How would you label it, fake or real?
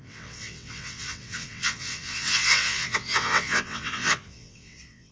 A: fake